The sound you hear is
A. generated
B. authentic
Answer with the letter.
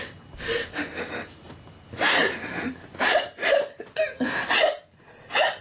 B